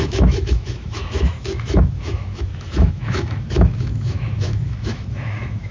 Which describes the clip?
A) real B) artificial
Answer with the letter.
B